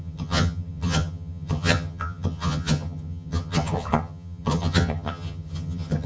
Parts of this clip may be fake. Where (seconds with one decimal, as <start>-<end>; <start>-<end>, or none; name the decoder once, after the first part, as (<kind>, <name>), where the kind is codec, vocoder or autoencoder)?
0.0-6.1 (vocoder, HiFi-GAN)